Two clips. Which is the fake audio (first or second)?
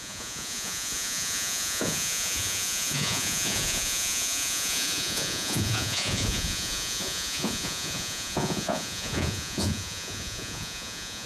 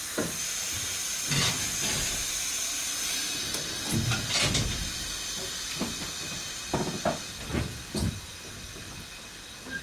first